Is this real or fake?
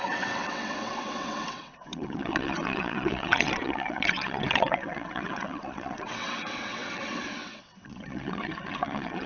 fake